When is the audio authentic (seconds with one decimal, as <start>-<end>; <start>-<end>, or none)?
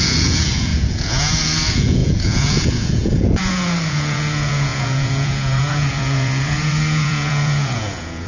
none